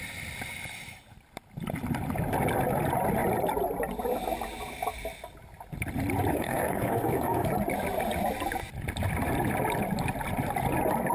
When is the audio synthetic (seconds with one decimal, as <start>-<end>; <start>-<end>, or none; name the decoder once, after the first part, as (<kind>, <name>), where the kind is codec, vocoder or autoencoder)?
6.3-7.5 (codec, SNAC)